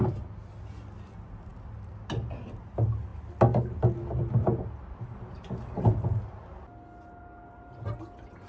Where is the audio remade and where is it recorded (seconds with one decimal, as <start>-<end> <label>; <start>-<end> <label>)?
0.0-8.5 recorded